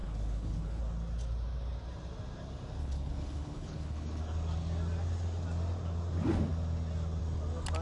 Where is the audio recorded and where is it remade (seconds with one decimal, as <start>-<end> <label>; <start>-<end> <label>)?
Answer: 0.0-0.8 remade; 0.8-2.8 recorded; 2.8-4.2 remade; 4.2-7.8 recorded